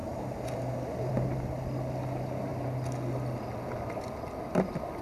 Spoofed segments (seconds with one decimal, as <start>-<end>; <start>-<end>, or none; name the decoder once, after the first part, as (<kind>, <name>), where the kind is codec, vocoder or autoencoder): none